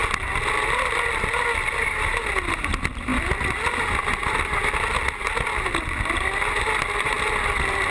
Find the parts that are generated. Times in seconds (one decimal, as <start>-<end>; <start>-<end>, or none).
none